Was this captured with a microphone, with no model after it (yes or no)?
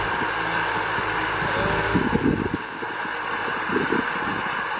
yes